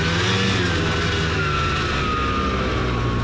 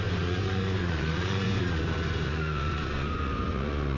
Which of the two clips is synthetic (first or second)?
second